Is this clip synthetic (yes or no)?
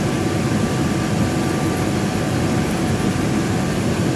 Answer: no